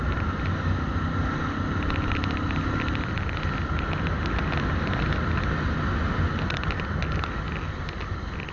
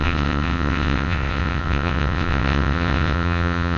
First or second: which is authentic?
first